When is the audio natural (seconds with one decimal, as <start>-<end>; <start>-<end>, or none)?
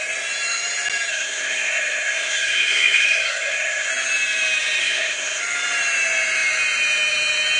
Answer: 0.0-1.1; 3.9-4.8; 5.4-7.6